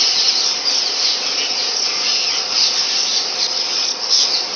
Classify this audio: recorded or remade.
recorded